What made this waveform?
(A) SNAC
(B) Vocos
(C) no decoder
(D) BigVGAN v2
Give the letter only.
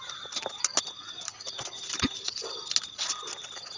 C